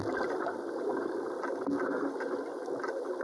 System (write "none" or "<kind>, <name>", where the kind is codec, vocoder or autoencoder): none